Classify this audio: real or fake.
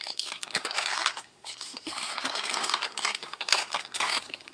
fake